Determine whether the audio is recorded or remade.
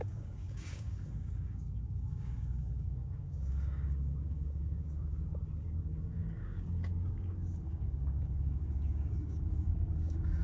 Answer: remade